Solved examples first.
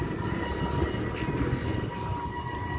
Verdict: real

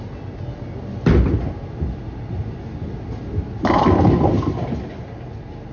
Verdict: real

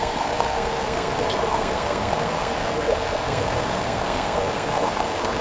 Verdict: fake